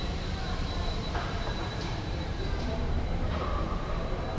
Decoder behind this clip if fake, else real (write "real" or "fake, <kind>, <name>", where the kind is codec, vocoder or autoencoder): fake, vocoder, BigVGAN v2